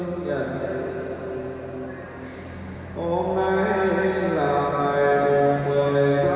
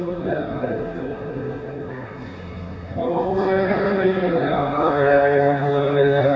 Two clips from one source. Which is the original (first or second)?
first